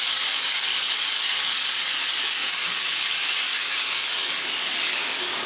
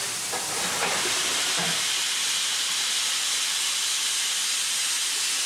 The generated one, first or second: first